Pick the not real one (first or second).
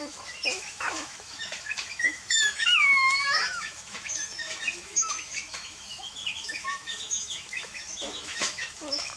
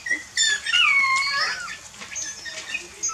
first